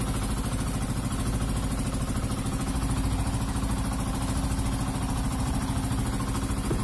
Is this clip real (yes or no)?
yes